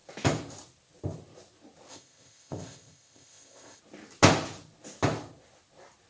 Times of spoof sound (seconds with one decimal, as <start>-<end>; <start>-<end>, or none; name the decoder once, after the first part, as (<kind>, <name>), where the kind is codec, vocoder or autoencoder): 1.9-3.8 (codec, ZipCodec)